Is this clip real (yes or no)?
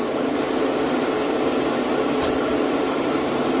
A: yes